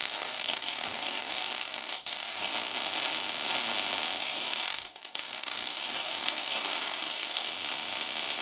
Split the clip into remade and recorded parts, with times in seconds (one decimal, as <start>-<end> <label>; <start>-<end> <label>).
0.0-2.5 remade; 2.5-4.2 recorded; 4.2-7.5 remade; 7.5-8.4 recorded